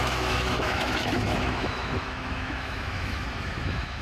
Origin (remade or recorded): remade